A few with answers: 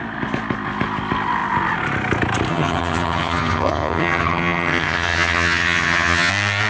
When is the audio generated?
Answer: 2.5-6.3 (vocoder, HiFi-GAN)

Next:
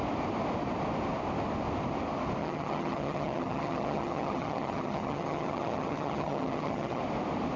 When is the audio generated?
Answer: 2.4-7.0 (vocoder, HiFi-GAN)